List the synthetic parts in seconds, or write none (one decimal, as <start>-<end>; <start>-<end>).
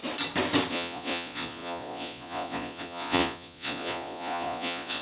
0.7-5.0